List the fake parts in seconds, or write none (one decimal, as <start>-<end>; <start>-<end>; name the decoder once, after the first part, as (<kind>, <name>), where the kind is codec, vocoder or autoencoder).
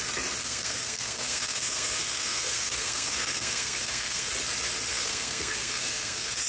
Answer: 0.4-4.3 (codec, SNAC); 4.9-6.5